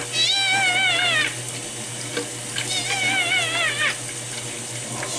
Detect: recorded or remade recorded